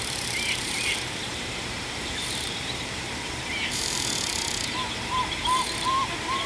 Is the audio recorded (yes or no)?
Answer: no